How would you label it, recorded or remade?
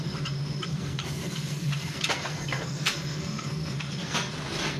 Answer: remade